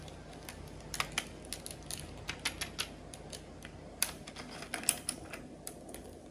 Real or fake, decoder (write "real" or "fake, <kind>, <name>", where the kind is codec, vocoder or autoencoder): real